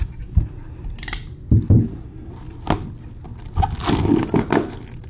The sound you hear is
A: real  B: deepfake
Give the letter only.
A